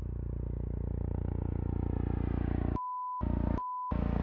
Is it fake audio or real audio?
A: real